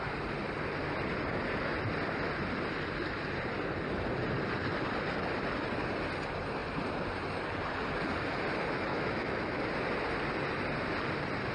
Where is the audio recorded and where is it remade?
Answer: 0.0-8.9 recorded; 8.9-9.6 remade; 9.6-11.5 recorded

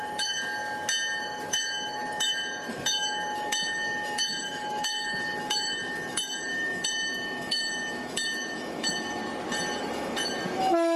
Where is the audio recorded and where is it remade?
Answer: 0.0-0.6 remade; 0.6-1.2 recorded; 1.2-9.2 remade; 9.2-9.8 recorded; 9.8-11.0 remade

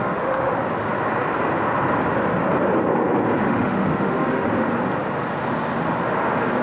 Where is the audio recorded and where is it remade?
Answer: 0.0-0.5 remade; 0.5-3.4 recorded; 3.4-4.5 remade; 4.5-6.6 recorded

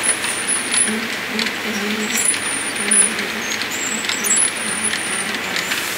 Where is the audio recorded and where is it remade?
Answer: 0.0-1.6 recorded; 1.6-2.4 remade; 2.4-6.0 recorded

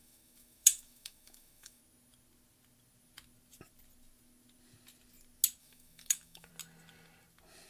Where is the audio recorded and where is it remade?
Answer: 0.0-1.8 remade; 1.8-5.6 recorded; 5.6-6.5 remade; 6.5-7.7 recorded

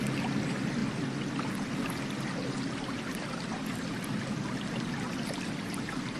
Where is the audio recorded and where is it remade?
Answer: 0.0-6.2 recorded